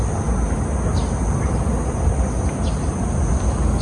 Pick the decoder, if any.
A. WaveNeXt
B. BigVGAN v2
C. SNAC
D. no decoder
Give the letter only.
D